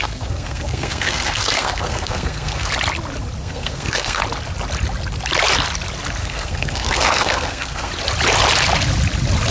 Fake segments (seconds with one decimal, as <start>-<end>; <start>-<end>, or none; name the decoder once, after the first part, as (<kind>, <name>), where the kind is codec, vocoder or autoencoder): 0.0-2.7 (codec, SNAC); 3.4-4.2; 6.2-7.9